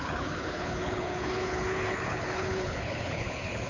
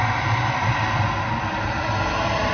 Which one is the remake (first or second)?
first